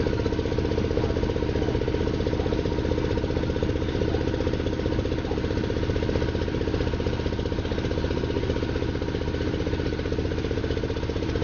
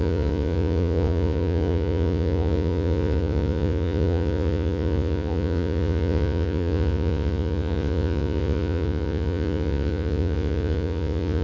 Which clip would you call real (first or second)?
first